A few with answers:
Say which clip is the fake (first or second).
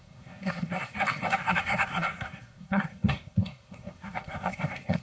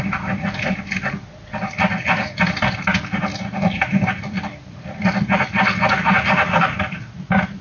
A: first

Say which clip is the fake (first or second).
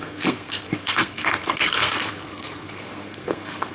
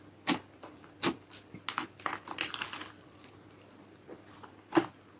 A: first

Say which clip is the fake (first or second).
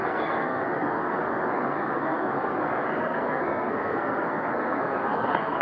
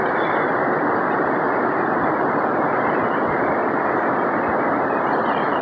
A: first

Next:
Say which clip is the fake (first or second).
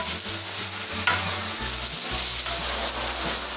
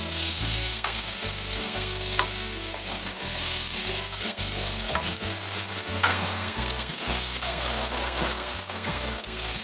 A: second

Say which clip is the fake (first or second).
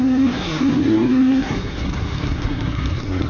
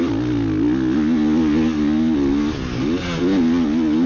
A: first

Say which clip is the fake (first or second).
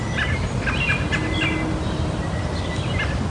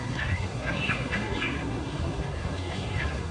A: second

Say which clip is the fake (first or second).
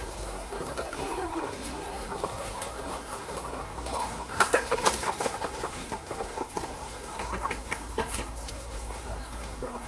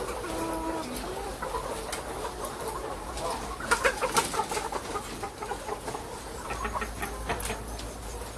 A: first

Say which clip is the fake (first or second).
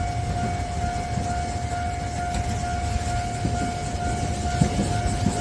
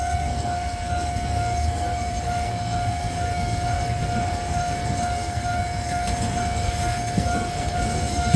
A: second